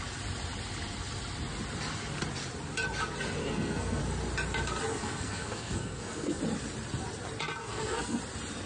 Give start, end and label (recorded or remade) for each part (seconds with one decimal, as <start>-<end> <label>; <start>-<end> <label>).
0.0-3.4 recorded; 3.4-4.0 remade; 4.0-4.9 recorded; 4.9-6.4 remade; 6.4-7.6 recorded; 7.6-8.2 remade; 8.2-8.7 recorded